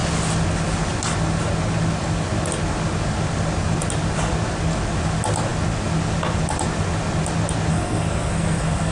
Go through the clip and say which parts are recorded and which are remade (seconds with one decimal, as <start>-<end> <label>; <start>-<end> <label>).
0.0-7.7 recorded; 7.7-8.9 remade